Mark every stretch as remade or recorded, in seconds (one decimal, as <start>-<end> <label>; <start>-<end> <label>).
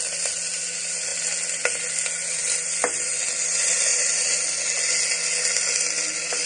0.0-6.5 recorded